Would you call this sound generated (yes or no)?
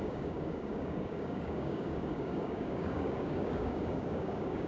yes